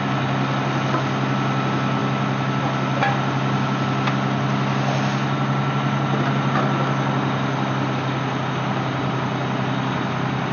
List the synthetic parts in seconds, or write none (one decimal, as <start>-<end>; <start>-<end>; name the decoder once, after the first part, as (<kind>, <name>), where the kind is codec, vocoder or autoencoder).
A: none